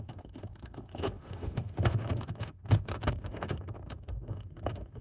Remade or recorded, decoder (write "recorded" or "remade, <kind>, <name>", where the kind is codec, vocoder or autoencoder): remade, autoencoder, DAC-VAE